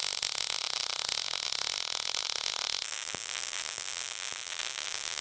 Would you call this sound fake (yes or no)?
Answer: no